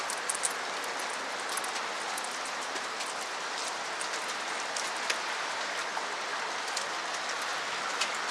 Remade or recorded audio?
recorded